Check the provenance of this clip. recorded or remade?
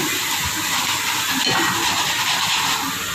recorded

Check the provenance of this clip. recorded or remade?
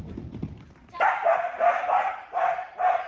recorded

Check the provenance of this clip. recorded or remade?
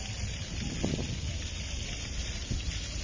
recorded